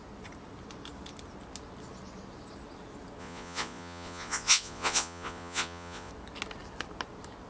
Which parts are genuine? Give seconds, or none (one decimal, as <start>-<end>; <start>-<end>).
0.0-3.2; 6.1-7.5